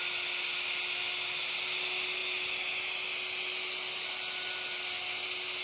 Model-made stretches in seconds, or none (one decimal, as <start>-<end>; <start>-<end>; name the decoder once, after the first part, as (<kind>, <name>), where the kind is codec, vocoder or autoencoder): none